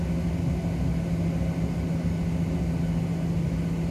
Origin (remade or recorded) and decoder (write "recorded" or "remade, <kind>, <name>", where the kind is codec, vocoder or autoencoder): recorded